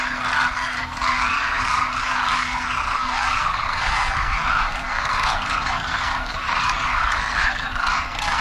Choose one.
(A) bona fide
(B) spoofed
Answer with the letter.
B